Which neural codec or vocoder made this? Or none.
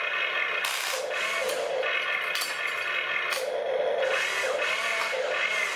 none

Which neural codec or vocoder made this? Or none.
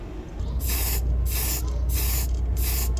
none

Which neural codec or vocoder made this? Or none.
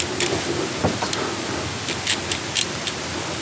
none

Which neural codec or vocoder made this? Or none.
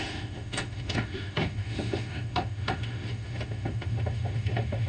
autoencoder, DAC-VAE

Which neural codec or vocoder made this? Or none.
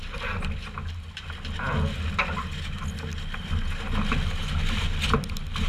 none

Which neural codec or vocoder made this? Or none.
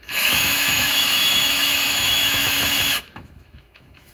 autoencoder, DAC-VAE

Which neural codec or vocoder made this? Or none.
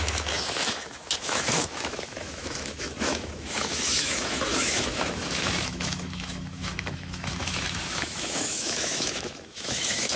autoencoder, DAC-VAE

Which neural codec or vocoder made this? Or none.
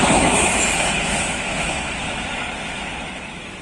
autoencoder, DAC-VAE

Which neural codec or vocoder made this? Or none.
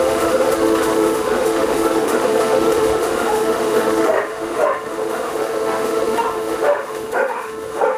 autoencoder, DAC-VAE